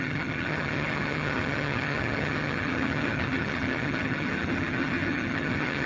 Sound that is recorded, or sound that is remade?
remade